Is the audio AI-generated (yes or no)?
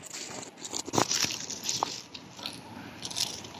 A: no